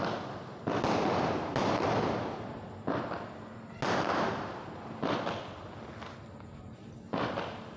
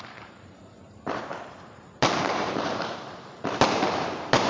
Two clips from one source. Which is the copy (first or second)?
second